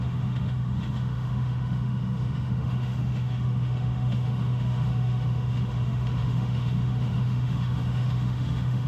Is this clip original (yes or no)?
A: no